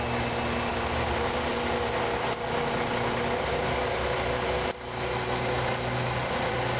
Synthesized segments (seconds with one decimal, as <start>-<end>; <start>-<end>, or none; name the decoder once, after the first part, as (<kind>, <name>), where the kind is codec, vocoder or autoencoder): 0.7-1.5 (vocoder, BigVGAN v2)